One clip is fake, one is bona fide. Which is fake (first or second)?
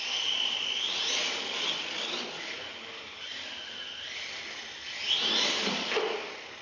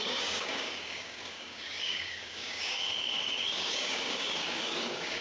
second